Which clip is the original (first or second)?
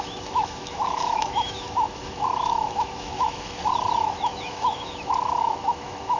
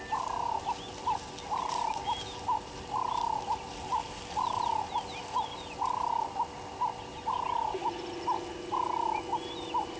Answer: second